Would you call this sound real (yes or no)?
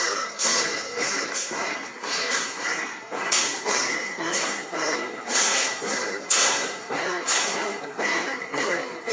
no